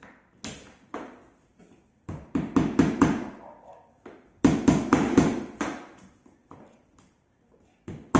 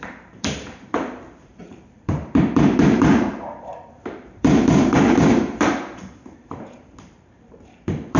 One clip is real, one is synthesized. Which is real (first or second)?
first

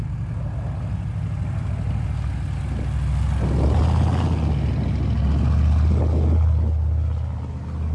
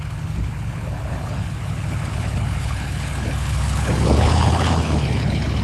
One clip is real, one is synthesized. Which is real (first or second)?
first